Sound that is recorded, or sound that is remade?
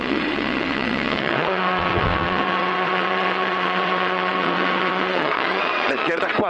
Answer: remade